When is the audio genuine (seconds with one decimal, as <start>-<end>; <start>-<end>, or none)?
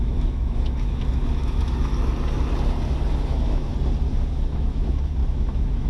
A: 1.9-3.1; 3.7-4.3